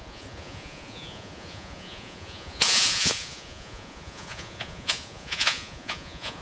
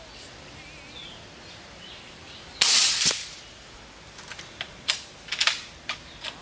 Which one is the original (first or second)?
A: second